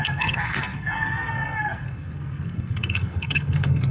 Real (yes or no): no